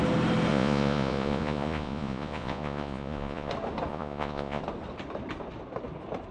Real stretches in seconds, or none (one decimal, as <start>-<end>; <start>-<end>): 0.0-0.5; 3.5-3.9; 4.6-6.3